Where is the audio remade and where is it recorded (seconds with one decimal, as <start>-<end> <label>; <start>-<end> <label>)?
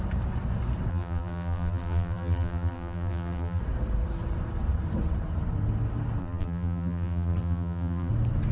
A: 0.0-0.9 recorded; 0.9-3.6 remade; 3.6-6.2 recorded; 6.2-8.1 remade; 8.1-8.5 recorded